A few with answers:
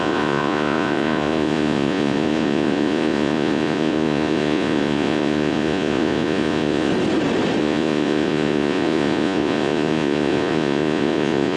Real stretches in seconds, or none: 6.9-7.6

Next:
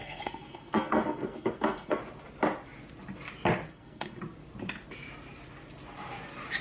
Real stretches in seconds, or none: 2.0-3.7; 4.2-6.6